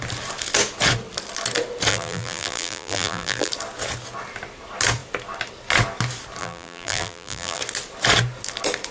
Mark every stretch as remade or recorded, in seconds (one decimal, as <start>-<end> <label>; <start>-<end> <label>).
0.0-1.9 recorded; 1.9-3.5 remade; 3.5-6.4 recorded; 6.4-7.6 remade; 7.6-8.9 recorded